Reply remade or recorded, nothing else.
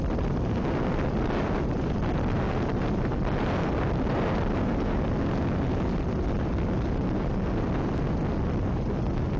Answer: recorded